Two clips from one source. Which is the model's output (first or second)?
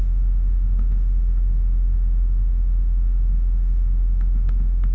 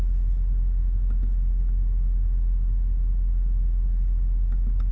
first